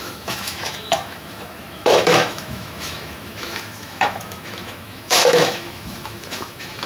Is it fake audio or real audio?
fake